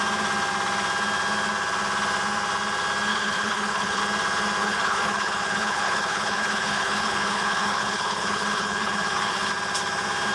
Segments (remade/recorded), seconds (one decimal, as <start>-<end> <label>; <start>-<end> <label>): 0.0-3.1 recorded; 3.1-4.0 remade; 4.0-4.6 recorded; 4.6-9.5 remade; 9.5-10.3 recorded